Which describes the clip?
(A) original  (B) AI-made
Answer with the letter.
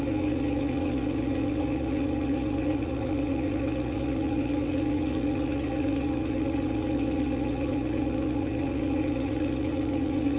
B